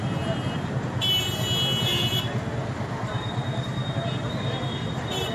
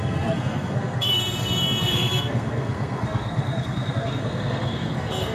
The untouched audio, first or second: first